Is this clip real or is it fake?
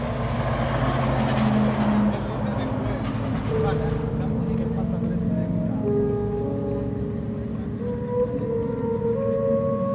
real